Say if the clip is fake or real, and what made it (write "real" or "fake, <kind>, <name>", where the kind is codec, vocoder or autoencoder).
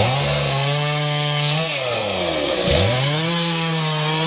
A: fake, codec, SNAC